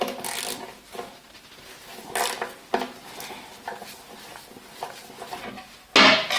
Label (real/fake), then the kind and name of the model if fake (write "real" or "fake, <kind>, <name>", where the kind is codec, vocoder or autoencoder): real